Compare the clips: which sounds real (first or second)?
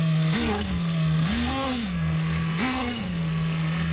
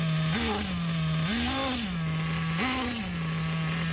second